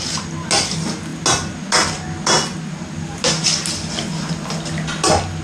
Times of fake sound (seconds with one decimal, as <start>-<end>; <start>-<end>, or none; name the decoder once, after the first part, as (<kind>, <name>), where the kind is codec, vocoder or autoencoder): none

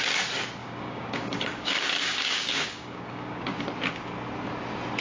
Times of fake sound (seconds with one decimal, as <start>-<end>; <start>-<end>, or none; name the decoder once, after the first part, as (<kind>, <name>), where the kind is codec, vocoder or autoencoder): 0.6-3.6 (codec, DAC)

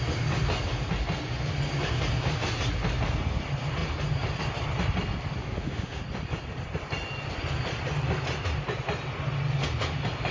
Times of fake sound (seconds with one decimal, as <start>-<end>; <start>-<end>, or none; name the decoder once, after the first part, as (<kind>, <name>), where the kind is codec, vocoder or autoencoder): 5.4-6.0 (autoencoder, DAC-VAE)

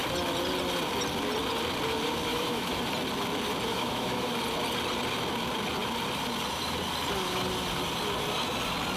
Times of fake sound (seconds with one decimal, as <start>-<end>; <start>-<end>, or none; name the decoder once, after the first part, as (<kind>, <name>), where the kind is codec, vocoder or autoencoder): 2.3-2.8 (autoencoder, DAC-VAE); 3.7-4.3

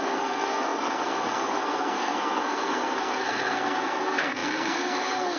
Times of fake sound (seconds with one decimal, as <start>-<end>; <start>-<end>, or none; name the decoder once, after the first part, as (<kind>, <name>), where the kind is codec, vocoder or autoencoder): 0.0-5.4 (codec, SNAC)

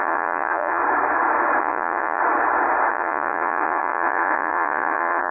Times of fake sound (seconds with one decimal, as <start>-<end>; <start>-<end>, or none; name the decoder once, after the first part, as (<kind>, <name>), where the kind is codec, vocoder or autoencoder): 0.0-0.8 (vocoder, Vocos); 1.6-2.2; 2.9-5.3

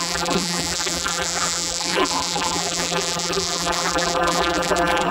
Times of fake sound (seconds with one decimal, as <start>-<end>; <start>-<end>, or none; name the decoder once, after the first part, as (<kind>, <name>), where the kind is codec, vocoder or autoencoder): 0.0-5.1 (vocoder, BigVGAN v2)